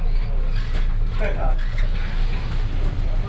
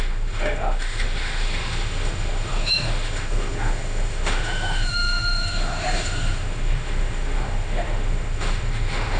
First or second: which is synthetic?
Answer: second